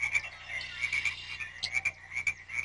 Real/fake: real